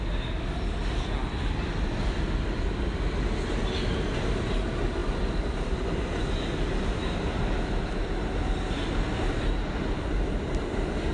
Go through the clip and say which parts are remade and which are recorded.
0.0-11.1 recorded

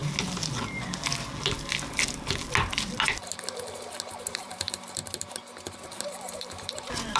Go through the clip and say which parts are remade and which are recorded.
0.0-4.3 recorded; 4.3-5.0 remade; 5.0-5.8 recorded; 5.8-7.2 remade

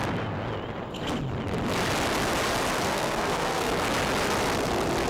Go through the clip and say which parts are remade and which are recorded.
0.0-2.9 recorded; 2.9-3.7 remade; 3.7-5.1 recorded

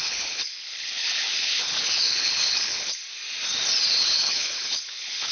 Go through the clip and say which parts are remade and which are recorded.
0.0-3.0 remade; 3.0-4.0 recorded; 4.0-5.3 remade

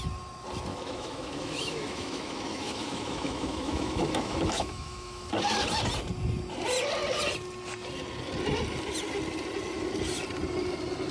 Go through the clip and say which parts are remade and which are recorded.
0.0-0.7 recorded; 0.7-5.3 remade; 5.3-11.1 recorded

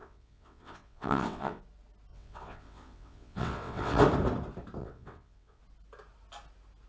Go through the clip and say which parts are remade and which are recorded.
0.0-1.6 remade; 1.6-2.1 recorded; 2.1-4.0 remade; 4.0-4.8 recorded; 4.8-5.6 remade; 5.6-6.9 recorded